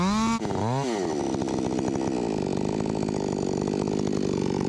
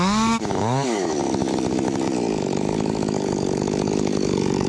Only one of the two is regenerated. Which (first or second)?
second